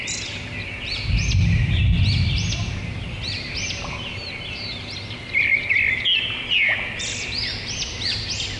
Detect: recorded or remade recorded